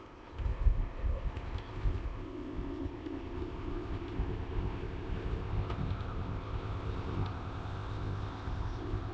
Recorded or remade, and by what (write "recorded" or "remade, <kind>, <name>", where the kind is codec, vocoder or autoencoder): remade, codec, ZipCodec